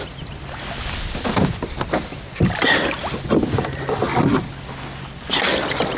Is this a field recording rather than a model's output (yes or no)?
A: yes